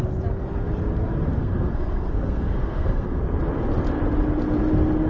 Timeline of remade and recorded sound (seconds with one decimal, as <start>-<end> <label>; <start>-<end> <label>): 0.0-1.4 recorded; 1.4-3.2 remade; 3.2-5.1 recorded